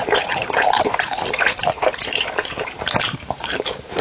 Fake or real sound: fake